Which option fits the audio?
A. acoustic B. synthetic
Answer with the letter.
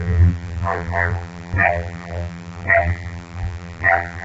B